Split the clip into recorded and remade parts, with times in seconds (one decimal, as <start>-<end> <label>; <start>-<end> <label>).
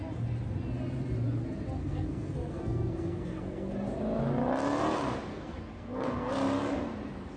0.0-1.8 recorded; 1.8-3.7 remade; 3.7-5.3 recorded; 5.3-6.3 remade; 6.3-7.4 recorded